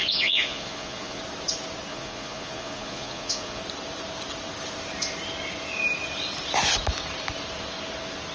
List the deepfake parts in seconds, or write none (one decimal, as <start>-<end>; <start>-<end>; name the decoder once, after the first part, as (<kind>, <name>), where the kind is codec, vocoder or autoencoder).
0.0-1.2 (vocoder, Vocos); 1.9-3.6